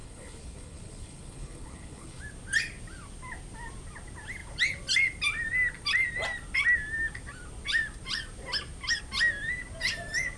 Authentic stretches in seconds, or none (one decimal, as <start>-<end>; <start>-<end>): 2.2-10.4